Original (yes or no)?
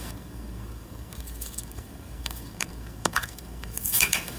no